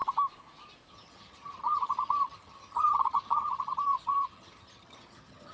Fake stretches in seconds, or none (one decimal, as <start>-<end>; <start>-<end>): 0.9-5.5